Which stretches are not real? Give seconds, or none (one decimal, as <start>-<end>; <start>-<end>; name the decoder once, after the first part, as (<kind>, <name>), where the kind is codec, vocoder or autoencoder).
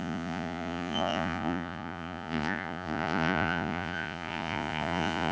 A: 0.0-5.3 (vocoder, Vocos)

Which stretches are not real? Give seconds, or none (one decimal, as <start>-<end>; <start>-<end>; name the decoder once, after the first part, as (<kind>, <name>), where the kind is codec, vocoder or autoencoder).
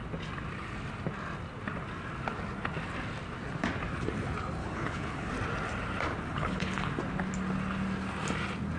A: 4.6-5.3 (codec, HILCodec); 6.3-6.9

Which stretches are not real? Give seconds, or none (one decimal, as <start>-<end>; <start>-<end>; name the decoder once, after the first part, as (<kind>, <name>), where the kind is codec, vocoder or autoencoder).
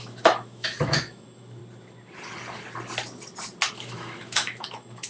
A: 0.0-1.6 (autoencoder, DAC-VAE); 3.7-5.1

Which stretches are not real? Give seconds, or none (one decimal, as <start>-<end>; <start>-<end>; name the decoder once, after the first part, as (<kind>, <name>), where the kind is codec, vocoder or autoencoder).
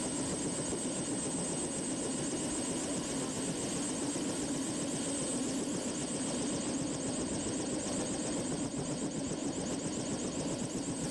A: none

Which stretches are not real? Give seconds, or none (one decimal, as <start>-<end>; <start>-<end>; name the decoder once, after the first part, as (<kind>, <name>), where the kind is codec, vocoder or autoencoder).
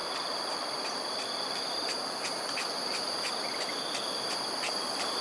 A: 0.0-5.2 (vocoder, BigVGAN v2)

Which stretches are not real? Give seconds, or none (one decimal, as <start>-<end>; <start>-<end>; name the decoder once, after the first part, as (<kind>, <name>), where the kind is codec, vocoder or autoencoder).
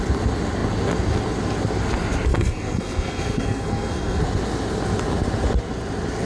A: 2.3-4.2 (codec, SNAC)